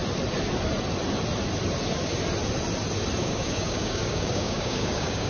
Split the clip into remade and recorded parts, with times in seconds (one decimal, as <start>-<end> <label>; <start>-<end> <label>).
0.0-3.2 recorded; 3.2-5.3 remade